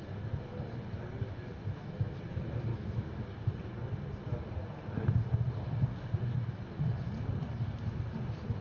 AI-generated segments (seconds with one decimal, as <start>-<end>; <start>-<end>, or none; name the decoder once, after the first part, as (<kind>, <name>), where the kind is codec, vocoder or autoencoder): 1.6-2.2 (autoencoder, DAC-VAE); 2.7-3.2